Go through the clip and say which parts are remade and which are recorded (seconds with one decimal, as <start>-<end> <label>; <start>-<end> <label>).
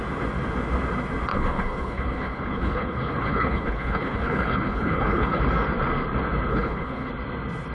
0.0-1.3 recorded; 1.3-5.4 remade; 5.4-6.5 recorded; 6.5-7.1 remade; 7.1-7.7 recorded